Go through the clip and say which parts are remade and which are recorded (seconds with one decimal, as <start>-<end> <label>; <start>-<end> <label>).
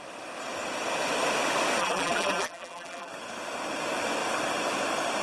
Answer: 0.0-1.8 recorded; 1.8-3.1 remade; 3.1-5.2 recorded